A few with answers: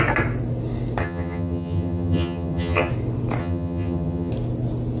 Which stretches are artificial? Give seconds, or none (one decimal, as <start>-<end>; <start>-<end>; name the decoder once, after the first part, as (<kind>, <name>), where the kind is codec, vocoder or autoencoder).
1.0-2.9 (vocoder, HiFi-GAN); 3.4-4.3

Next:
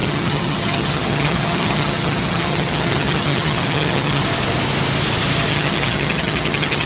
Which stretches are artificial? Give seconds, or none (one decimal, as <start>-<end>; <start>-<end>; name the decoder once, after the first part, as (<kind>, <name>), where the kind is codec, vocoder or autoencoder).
0.0-4.2 (vocoder, HiFi-GAN); 5.5-6.9

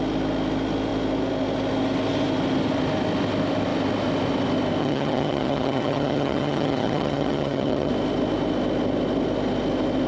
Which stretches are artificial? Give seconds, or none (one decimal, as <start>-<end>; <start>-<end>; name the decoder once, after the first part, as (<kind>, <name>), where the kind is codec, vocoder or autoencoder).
4.8-7.9 (vocoder, HiFi-GAN)